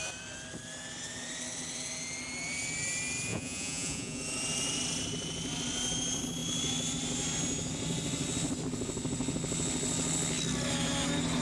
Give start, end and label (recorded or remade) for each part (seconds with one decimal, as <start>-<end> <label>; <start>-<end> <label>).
0.0-3.3 recorded; 3.3-4.2 remade; 4.2-11.4 recorded